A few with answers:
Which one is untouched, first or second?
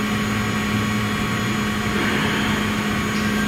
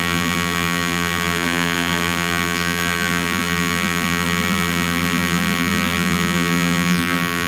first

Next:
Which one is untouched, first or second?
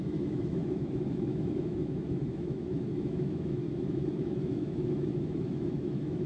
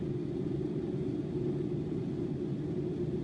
second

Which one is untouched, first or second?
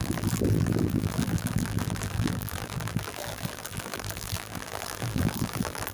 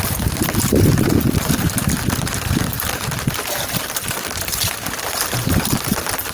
second